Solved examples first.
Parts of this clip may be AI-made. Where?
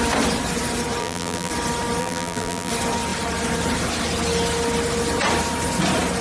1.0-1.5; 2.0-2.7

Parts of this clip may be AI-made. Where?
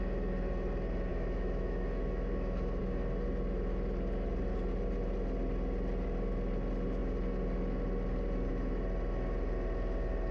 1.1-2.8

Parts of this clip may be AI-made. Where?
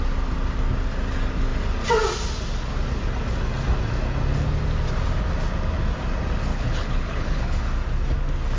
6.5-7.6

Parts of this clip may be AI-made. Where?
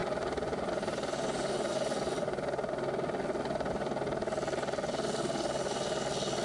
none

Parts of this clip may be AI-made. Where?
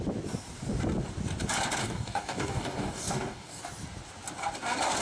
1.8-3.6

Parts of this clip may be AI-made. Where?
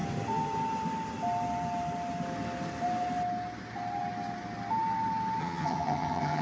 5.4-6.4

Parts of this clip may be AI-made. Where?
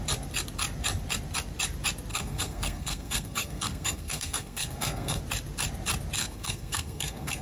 2.1-5.2; 6.2-7.4